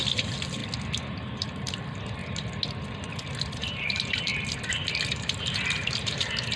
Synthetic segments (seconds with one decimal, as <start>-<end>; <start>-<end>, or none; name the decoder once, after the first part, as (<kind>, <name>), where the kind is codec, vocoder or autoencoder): 0.0-0.6 (vocoder, BigVGAN v2); 1.1-2.2; 3.5-4.3; 5.1-6.6